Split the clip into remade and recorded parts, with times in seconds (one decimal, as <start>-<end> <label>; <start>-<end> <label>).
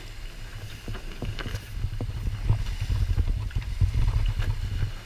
0.0-5.1 recorded